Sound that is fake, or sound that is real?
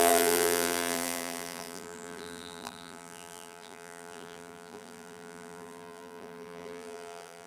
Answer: fake